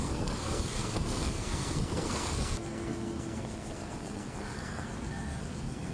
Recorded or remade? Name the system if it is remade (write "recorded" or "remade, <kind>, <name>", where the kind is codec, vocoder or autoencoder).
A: remade, codec, SNAC